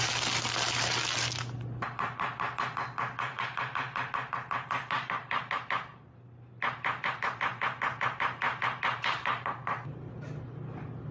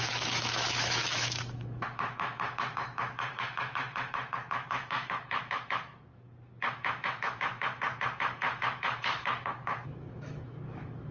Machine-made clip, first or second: second